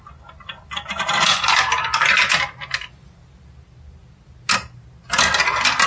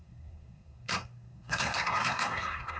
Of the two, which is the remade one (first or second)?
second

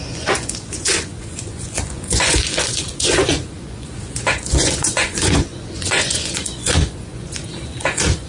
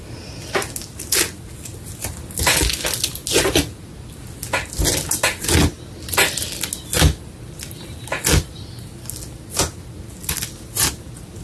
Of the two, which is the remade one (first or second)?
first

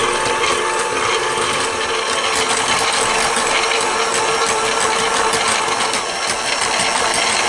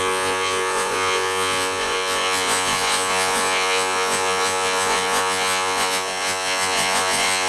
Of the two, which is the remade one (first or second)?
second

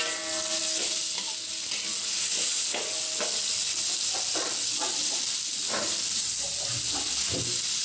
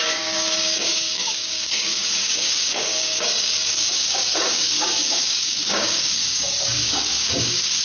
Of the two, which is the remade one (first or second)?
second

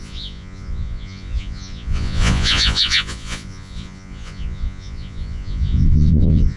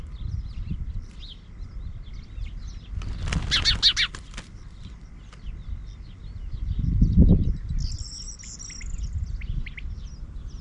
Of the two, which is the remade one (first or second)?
first